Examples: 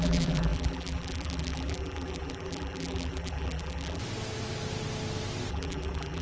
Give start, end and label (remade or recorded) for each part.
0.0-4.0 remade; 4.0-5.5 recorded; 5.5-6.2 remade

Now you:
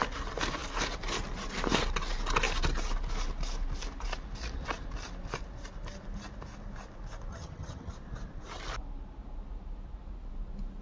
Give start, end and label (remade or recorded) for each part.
0.0-7.3 recorded; 7.3-7.9 remade; 7.9-10.8 recorded

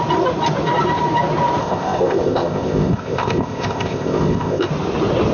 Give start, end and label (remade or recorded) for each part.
0.0-1.6 recorded; 1.6-4.7 remade; 4.7-5.3 recorded

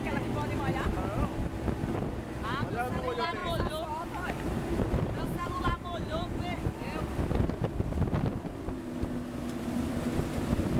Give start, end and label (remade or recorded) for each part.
0.0-3.4 recorded; 3.4-6.6 remade; 6.6-10.8 recorded

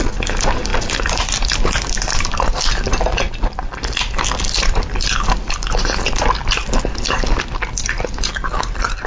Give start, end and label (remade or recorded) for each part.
0.0-9.1 recorded

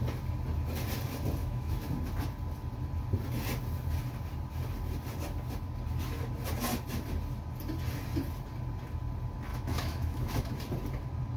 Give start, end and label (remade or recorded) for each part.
0.0-1.4 recorded; 1.4-2.0 remade; 2.0-9.5 recorded; 9.5-10.5 remade; 10.5-11.4 recorded

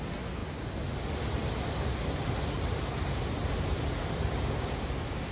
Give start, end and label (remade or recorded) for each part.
0.0-5.3 recorded